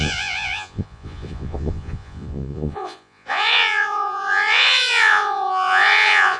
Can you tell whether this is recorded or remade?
remade